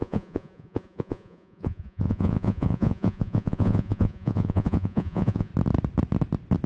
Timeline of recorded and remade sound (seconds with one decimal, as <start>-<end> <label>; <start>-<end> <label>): 0.0-5.5 remade; 5.5-6.7 recorded